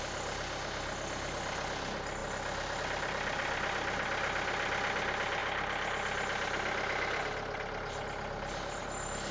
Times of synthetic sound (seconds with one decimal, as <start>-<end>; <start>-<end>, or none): none